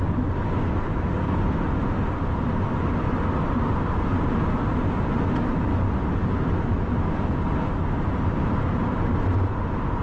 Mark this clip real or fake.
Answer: real